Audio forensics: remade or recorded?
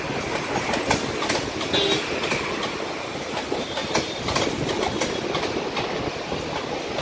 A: recorded